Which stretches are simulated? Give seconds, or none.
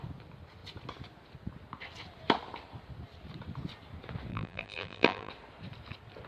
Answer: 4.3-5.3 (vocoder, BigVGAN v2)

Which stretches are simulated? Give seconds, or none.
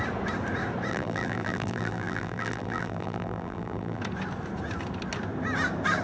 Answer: 0.9-4.0 (vocoder, BigVGAN v2)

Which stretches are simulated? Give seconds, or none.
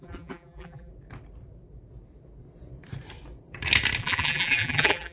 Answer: 0.0-0.9 (vocoder, BigVGAN v2); 4.0-5.1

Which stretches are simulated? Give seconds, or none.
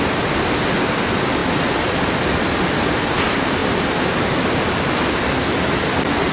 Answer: 3.6-4.6 (vocoder, BigVGAN v2)